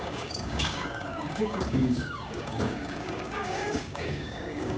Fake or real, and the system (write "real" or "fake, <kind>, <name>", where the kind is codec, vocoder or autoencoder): fake, codec, DAC